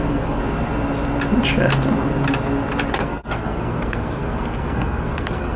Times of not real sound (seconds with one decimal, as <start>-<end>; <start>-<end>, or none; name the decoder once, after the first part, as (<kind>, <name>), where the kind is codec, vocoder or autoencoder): 0.0-0.4 (codec, SNAC); 2.9-5.6